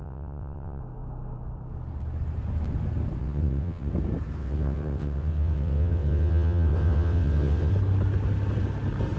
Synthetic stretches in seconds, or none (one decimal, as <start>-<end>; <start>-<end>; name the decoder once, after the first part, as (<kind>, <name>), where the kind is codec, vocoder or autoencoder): 0.0-0.8 (vocoder, WaveNeXt); 3.2-3.9; 4.4-7.7

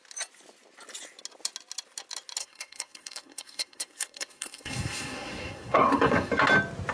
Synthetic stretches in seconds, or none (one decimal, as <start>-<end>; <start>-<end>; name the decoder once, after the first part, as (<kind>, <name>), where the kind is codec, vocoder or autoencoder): 2.4-6.3 (codec, SNAC)

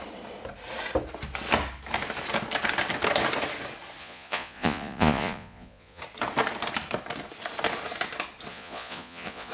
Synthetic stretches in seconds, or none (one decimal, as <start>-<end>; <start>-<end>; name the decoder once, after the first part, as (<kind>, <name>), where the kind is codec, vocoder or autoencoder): 4.0-6.0 (vocoder, Vocos); 8.5-9.5

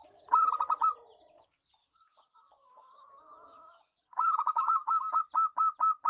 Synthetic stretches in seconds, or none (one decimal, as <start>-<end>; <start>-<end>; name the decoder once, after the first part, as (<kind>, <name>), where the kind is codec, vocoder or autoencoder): 1.8-5.2 (codec, DAC)

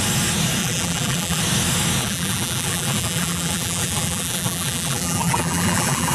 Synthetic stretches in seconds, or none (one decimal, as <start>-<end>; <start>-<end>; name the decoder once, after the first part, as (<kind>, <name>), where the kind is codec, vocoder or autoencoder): 0.6-1.4 (vocoder, BigVGAN v2); 2.0-6.1

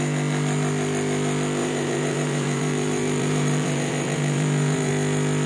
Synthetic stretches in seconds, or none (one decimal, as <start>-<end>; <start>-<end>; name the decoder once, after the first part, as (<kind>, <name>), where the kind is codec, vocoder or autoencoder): 1.6-4.9 (vocoder, BigVGAN v2)